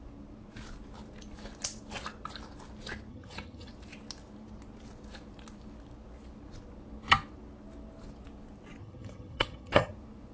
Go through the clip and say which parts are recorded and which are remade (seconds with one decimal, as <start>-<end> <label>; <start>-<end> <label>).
0.0-3.1 recorded; 3.1-3.7 remade; 3.7-8.8 recorded; 8.8-9.9 remade; 9.9-10.3 recorded